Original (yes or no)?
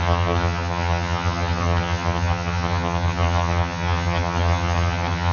no